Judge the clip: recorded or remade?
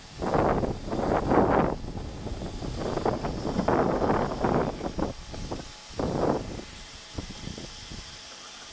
recorded